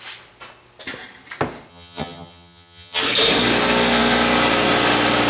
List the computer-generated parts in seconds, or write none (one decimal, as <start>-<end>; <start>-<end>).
1.7-3.0